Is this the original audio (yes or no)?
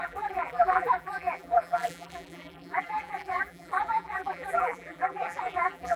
no